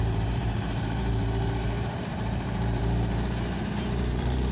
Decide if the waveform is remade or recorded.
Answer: remade